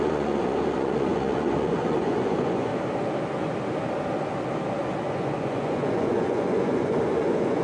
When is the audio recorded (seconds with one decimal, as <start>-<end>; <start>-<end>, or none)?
2.7-5.1